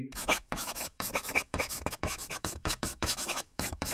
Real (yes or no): no